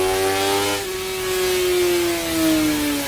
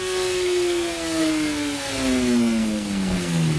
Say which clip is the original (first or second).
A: first